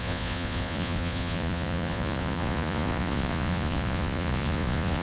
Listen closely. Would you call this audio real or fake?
fake